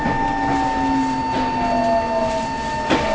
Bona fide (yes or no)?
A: yes